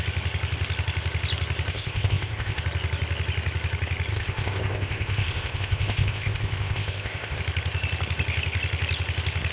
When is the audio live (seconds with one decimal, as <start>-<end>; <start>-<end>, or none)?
0.0-1.7; 2.6-4.1; 7.4-9.5